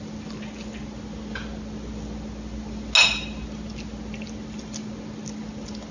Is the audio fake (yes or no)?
no